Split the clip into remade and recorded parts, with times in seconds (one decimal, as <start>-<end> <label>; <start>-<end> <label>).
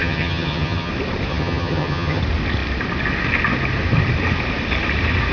0.0-0.9 remade; 0.9-1.3 recorded; 1.3-2.2 remade; 2.2-5.3 recorded